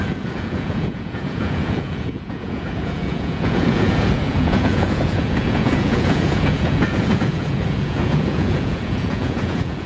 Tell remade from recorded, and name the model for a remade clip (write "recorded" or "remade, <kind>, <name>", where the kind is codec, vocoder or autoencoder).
remade, vocoder, Vocos